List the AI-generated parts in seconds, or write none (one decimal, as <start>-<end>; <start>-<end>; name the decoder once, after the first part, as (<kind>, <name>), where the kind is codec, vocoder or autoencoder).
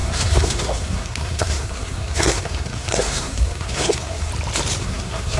0.0-4.3 (codec, SNAC); 4.8-5.4